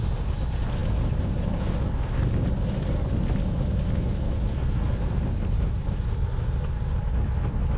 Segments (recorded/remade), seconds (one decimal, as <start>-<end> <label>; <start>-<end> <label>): 0.0-7.8 recorded